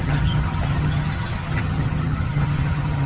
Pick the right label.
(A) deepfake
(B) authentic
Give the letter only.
A